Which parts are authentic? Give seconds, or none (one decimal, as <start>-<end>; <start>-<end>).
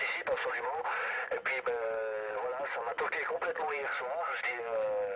0.0-5.2